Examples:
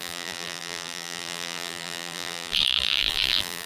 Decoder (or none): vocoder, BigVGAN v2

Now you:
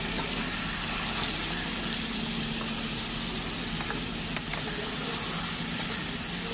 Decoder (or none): none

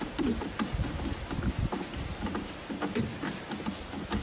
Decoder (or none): none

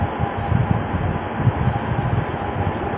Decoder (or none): none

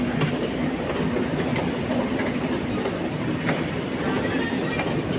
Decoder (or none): none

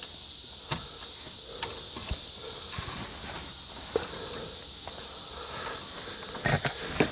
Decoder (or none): none